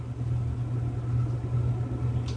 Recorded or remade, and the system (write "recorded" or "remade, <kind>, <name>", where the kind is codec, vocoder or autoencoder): recorded